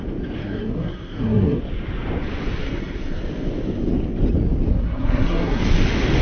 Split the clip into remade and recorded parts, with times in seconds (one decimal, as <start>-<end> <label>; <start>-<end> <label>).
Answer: 0.0-0.4 recorded; 0.4-1.6 remade; 1.6-2.6 recorded; 2.6-3.2 remade; 3.2-4.7 recorded; 4.7-5.6 remade; 5.6-6.2 recorded